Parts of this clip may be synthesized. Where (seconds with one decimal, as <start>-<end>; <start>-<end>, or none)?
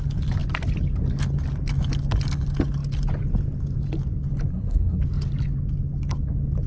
4.5-5.0